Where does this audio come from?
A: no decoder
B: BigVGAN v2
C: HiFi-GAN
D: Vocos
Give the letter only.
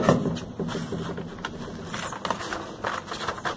A